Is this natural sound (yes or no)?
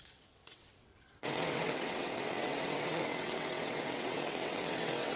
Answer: no